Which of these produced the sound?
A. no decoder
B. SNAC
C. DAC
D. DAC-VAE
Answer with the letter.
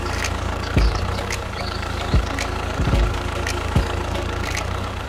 C